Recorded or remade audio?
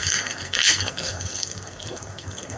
remade